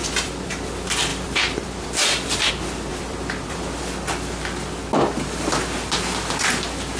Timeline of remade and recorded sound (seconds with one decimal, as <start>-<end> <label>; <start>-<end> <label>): 0.0-0.7 remade; 0.7-1.1 recorded; 1.1-2.5 remade; 2.5-2.9 recorded; 2.9-3.8 remade; 3.8-7.0 recorded